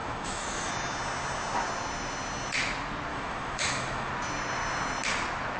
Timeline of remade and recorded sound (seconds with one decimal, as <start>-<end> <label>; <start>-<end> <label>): 0.0-0.7 remade; 0.7-3.1 recorded; 3.1-4.1 remade; 4.1-5.6 recorded